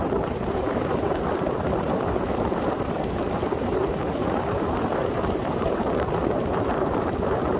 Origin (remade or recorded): remade